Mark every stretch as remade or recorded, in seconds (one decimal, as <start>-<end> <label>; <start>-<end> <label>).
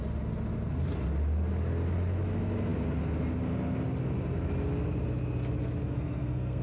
0.0-5.8 recorded; 5.8-6.6 remade